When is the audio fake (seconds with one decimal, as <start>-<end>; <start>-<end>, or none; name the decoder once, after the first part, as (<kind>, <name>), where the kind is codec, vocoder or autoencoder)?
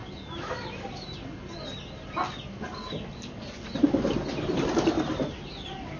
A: none